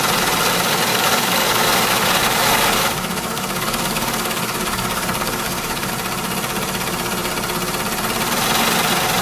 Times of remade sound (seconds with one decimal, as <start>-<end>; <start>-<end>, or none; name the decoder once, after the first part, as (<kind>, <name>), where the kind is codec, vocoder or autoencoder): 0.9-5.9 (codec, DAC)